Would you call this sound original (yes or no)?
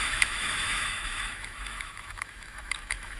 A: no